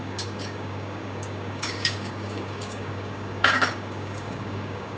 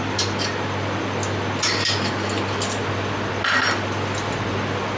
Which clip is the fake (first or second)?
first